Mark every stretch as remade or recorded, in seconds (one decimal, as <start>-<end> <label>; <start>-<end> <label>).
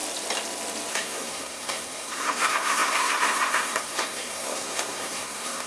0.0-0.9 recorded; 0.9-5.7 remade